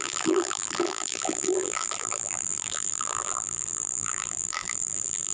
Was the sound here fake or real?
fake